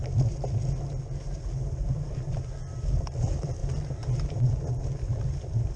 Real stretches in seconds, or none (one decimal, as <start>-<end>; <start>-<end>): 0.0-5.8